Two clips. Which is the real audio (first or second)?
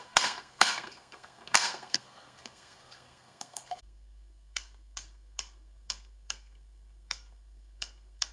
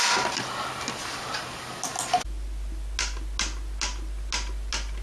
second